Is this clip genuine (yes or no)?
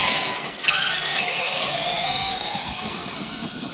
no